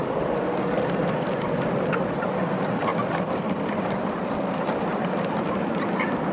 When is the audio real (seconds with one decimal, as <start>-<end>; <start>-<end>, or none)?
none